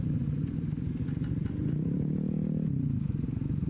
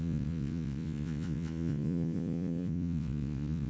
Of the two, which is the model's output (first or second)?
second